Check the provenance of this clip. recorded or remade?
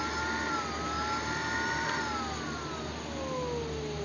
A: recorded